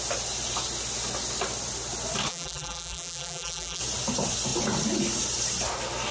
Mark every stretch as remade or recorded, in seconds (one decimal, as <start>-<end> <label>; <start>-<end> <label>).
0.0-2.3 recorded; 2.3-3.8 remade; 3.8-6.1 recorded